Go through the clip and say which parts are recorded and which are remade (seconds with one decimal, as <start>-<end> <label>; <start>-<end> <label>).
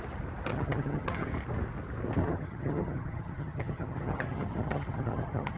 0.0-0.5 recorded; 0.5-1.3 remade; 1.3-2.2 recorded; 2.2-5.6 remade